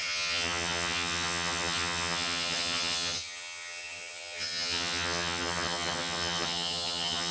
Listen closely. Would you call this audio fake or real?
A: fake